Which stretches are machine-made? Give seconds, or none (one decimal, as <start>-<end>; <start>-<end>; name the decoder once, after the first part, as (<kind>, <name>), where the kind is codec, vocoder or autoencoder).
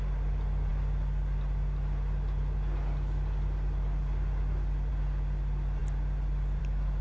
none